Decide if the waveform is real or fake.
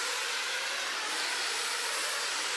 fake